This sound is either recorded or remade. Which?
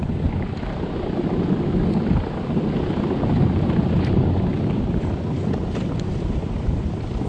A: recorded